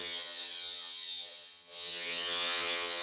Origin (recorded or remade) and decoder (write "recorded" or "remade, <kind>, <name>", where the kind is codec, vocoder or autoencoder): remade, vocoder, HiFi-GAN